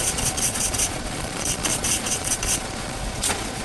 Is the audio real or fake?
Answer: fake